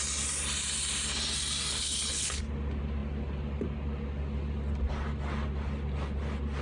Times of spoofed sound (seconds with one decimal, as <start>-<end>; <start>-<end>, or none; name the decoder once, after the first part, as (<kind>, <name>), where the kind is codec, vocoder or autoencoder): 1.7-2.4 (codec, HILCodec)